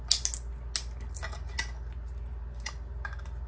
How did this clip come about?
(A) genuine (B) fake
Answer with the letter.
A